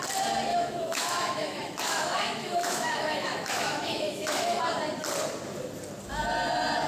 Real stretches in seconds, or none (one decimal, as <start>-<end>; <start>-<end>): 0.0-0.5; 4.6-6.9